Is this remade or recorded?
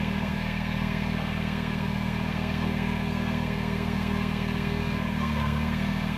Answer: remade